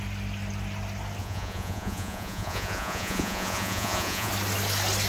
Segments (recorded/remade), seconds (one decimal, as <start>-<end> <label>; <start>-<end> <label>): 0.0-1.2 recorded; 1.2-4.3 remade; 4.3-5.1 recorded

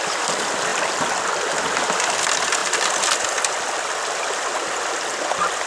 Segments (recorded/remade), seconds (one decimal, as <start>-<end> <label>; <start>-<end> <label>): 0.0-5.7 recorded

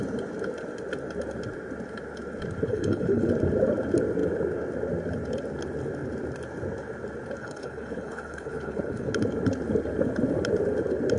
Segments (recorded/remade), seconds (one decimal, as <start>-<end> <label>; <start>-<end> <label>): 0.0-2.7 recorded; 2.7-3.3 remade; 3.3-7.4 recorded; 7.4-9.1 remade; 9.1-11.2 recorded

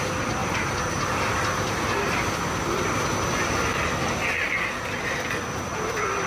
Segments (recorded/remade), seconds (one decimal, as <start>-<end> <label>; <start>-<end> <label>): 0.0-0.4 recorded; 0.4-1.2 remade; 1.2-6.3 recorded